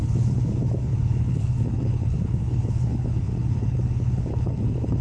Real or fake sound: fake